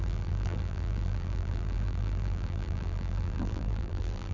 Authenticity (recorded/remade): remade